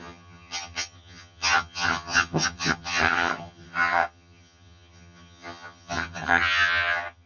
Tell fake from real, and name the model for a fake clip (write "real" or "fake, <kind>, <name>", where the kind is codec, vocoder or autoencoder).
fake, vocoder, HiFi-GAN